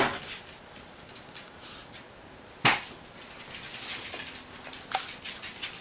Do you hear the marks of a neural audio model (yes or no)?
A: no